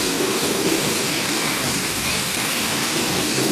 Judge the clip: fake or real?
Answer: fake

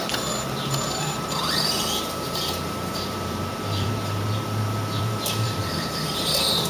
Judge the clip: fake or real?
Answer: fake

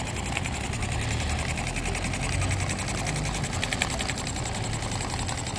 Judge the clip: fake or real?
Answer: real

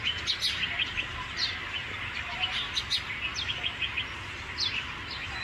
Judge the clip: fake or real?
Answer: real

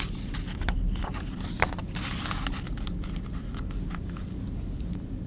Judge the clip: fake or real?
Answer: fake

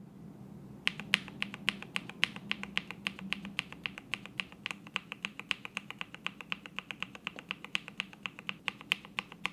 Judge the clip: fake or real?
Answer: real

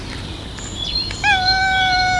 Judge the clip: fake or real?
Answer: real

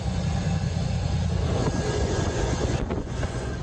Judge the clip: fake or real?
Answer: fake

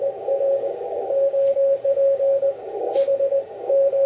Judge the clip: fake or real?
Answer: fake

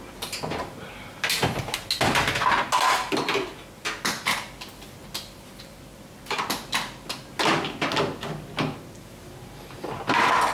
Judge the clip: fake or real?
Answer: real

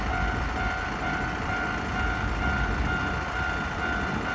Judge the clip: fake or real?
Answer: real